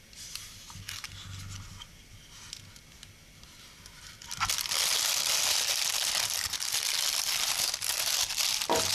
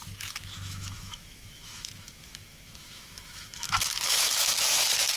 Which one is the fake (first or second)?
second